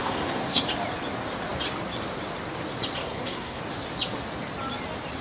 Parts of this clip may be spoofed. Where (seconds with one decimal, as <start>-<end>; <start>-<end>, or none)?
0.0-0.6; 3.0-3.6